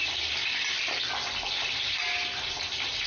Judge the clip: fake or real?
real